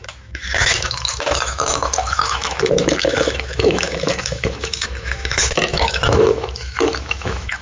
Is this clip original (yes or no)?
no